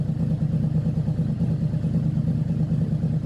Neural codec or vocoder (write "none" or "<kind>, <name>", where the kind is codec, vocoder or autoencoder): none